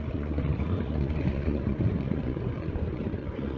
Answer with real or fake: fake